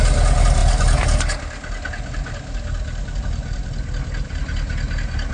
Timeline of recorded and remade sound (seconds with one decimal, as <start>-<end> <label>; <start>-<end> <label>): 0.0-5.3 recorded